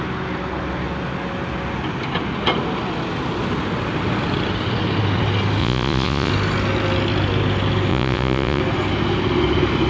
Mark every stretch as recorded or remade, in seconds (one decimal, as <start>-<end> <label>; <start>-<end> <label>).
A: 0.0-5.6 recorded; 5.6-6.3 remade; 6.3-7.9 recorded; 7.9-8.6 remade; 8.6-9.9 recorded